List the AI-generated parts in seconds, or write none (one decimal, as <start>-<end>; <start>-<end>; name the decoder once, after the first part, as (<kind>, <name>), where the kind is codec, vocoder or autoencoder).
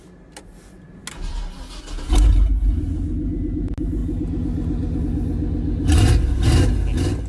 none